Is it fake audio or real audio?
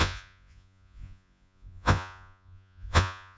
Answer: fake